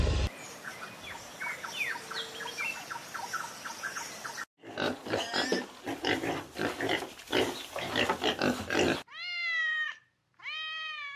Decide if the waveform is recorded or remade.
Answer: recorded